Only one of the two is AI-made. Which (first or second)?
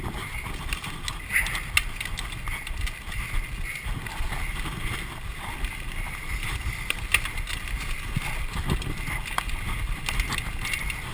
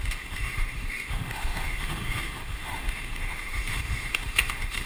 second